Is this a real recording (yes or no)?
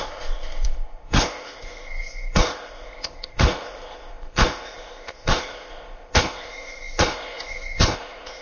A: no